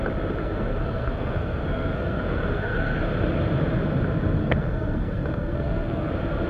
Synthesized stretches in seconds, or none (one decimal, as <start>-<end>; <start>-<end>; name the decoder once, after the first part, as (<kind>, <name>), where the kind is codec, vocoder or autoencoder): 0.4-3.0 (codec, SNAC); 4.4-6.1